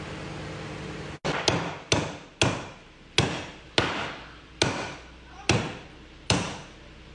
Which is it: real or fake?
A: real